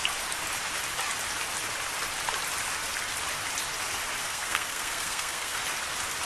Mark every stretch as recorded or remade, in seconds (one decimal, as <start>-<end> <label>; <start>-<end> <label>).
0.0-4.2 recorded; 4.2-5.6 remade; 5.6-6.3 recorded

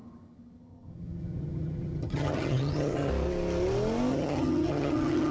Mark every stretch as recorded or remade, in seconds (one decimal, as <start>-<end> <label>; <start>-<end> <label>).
0.0-3.1 remade; 3.1-4.1 recorded; 4.1-5.3 remade

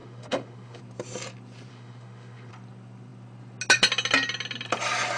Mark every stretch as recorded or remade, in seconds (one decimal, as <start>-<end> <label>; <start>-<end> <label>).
0.0-0.8 remade; 0.8-1.7 recorded; 1.7-2.5 remade; 2.5-5.2 recorded

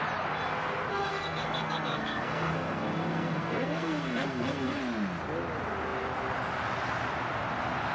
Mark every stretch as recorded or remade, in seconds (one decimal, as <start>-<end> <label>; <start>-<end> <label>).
0.0-0.9 recorded; 0.9-4.8 remade; 4.8-7.9 recorded

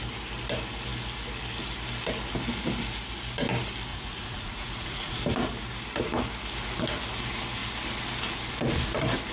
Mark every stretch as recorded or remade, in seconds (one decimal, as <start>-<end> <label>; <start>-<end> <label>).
0.0-3.9 recorded; 3.9-5.2 remade; 5.2-9.3 recorded

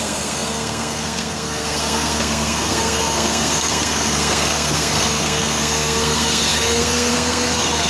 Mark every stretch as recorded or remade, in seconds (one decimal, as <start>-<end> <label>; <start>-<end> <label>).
0.0-7.9 remade

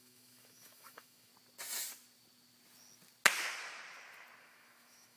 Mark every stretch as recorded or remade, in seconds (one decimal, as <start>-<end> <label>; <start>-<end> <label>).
0.0-1.3 remade; 1.3-4.4 recorded; 4.4-5.2 remade